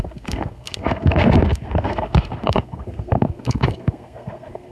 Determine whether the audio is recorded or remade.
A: remade